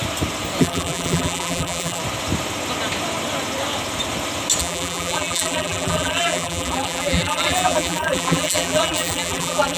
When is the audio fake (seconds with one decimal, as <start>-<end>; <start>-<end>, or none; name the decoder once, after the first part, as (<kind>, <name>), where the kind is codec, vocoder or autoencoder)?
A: 0.6-2.0 (vocoder, BigVGAN v2); 4.6-9.8